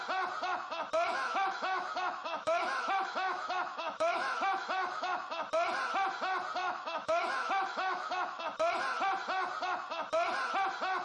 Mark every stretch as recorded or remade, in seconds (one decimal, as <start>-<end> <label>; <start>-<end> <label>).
0.0-1.1 recorded; 1.1-5.2 remade; 5.2-6.6 recorded; 6.6-8.4 remade; 8.4-11.0 recorded